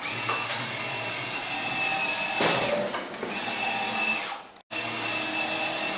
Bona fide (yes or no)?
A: yes